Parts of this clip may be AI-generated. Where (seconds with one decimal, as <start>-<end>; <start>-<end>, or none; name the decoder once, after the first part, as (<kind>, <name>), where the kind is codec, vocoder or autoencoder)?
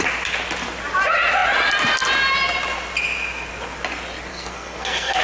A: 4.3-5.2 (codec, SNAC)